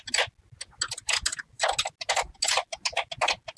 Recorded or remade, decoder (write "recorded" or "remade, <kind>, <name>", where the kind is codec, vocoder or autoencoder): recorded